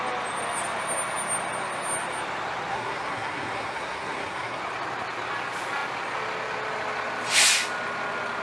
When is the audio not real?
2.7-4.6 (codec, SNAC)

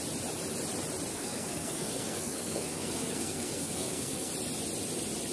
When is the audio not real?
1.1-4.3 (codec, SNAC)

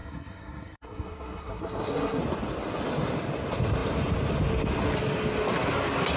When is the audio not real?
0.0-2.2 (codec, SNAC)

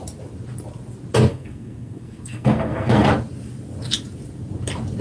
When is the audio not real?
1.3-3.1 (codec, SNAC)

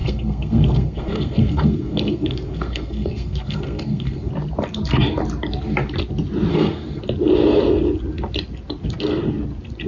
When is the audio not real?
0.0-4.3 (codec, SNAC); 6.5-7.0

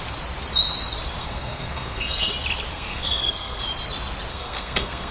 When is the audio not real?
1.2-2.3 (codec, SNAC); 2.7-3.6; 4.3-5.1

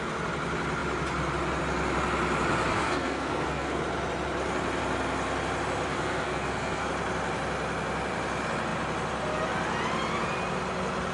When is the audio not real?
2.7-3.8 (codec, SNAC); 5.9-6.9

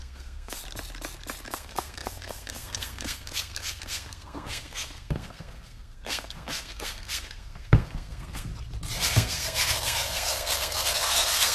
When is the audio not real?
0.0-0.6 (codec, SNAC); 1.5-8.5; 9.0-11.5